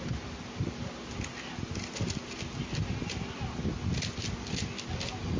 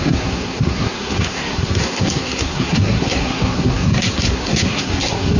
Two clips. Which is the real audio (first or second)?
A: first